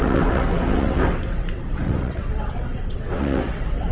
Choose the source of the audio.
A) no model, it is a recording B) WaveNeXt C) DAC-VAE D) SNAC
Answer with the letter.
B